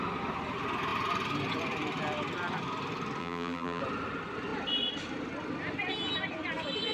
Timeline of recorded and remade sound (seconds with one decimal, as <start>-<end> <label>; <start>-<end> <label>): 0.0-3.2 recorded; 3.2-3.8 remade; 3.8-6.9 recorded